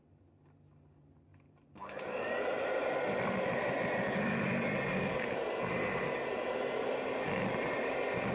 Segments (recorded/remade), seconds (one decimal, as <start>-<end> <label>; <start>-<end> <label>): 0.0-1.3 recorded; 1.3-2.5 remade; 2.5-8.3 recorded